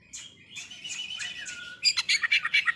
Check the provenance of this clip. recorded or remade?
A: recorded